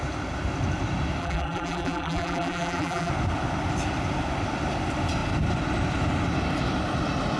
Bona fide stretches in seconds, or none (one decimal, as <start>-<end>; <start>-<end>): 0.0-1.2; 3.1-7.4